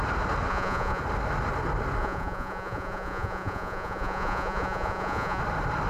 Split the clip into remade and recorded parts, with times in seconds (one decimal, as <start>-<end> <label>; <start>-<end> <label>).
0.0-0.5 recorded; 0.5-1.0 remade; 1.0-2.0 recorded; 2.0-5.4 remade; 5.4-5.9 recorded